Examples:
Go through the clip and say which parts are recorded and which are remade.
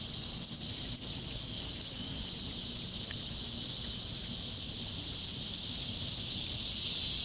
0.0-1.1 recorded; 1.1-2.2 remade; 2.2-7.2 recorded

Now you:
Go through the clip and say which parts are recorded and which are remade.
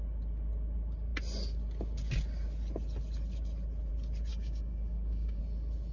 0.0-4.3 recorded; 4.3-5.4 remade; 5.4-5.9 recorded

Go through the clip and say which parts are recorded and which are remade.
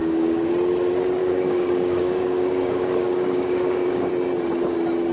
0.0-0.5 remade; 0.5-1.2 recorded; 1.2-4.1 remade; 4.1-5.1 recorded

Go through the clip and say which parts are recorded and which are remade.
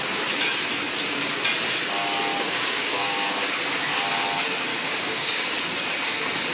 0.0-2.3 recorded; 2.3-3.6 remade; 3.6-4.7 recorded; 4.7-5.6 remade; 5.6-6.5 recorded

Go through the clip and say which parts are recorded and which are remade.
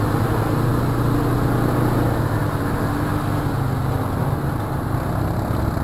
0.0-5.8 recorded